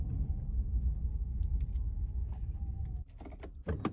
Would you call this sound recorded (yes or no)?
yes